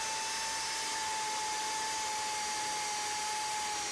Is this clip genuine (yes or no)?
yes